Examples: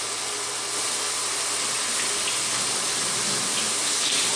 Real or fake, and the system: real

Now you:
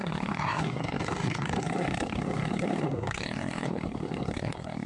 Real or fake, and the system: fake, codec, SNAC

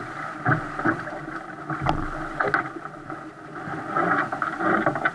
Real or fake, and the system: real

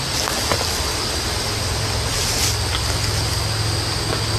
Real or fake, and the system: real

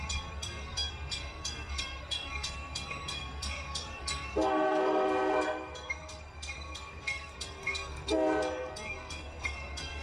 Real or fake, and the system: fake, codec, SNAC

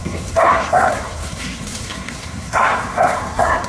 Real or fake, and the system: fake, codec, SNAC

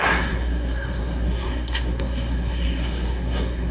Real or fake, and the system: fake, codec, SNAC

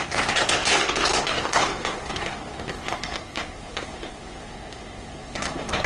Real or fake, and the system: fake, codec, SNAC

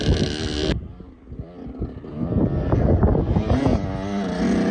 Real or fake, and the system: real